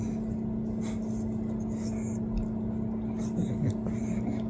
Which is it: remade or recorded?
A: recorded